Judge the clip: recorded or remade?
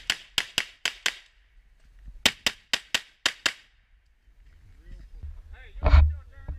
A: recorded